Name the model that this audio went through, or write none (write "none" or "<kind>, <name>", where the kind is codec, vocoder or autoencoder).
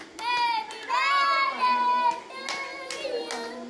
none